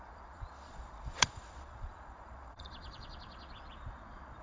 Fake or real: fake